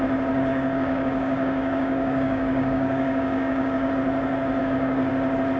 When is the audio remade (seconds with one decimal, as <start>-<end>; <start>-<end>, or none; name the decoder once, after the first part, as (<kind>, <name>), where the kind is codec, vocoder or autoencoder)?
0.5-3.9 (codec, DAC); 4.6-5.1